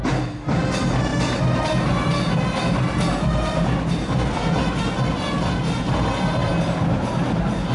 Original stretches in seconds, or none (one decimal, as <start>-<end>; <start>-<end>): 0.0-7.7